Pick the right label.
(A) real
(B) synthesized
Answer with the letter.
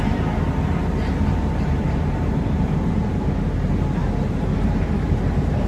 B